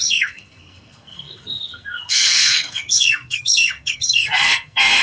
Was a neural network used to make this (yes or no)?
yes